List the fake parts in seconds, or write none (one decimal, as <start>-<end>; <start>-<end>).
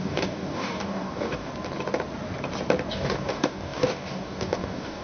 0.0-1.5; 2.9-5.0